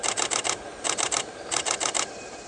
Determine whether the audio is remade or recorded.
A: remade